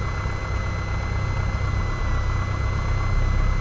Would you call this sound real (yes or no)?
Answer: yes